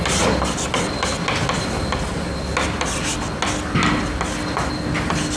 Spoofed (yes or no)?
no